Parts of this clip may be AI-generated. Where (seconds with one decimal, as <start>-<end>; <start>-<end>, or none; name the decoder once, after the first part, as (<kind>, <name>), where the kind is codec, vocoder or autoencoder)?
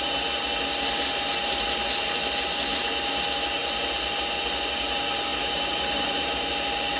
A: 5.3-6.5 (vocoder, BigVGAN v2)